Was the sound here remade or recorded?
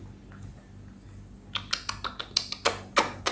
recorded